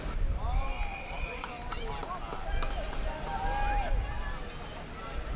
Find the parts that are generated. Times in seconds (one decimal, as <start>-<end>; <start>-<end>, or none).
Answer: 0.9-1.5

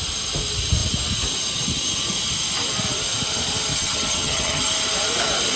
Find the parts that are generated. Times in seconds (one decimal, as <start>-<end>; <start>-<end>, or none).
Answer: 3.7-4.6

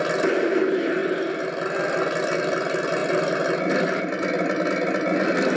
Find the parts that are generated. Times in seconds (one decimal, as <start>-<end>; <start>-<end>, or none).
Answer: none

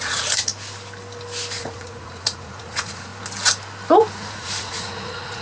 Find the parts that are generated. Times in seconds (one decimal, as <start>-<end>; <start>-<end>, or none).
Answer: 0.0-0.5; 1.6-3.1; 4.1-5.4